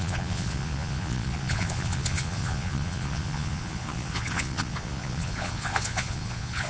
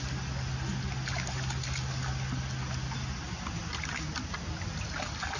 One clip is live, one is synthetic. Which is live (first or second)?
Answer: second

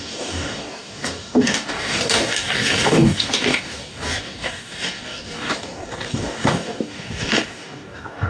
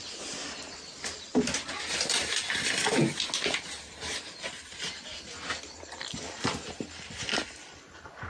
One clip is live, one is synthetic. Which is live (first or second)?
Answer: second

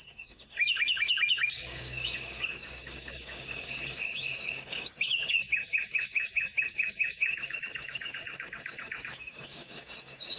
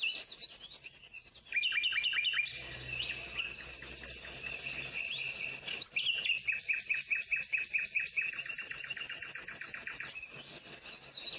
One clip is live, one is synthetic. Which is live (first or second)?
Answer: second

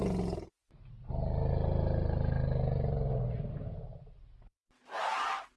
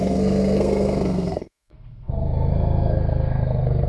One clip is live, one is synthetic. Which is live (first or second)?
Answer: first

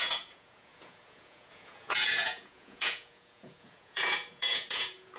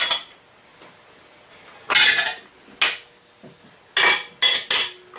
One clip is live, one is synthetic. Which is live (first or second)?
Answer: second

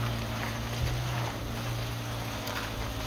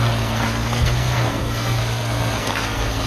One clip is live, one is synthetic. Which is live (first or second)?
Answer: first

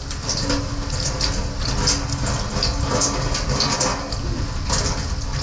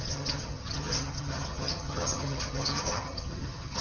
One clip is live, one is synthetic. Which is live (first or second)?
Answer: first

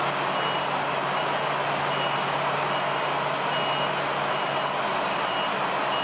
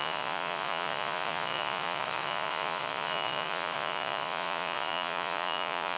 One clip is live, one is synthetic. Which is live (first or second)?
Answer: first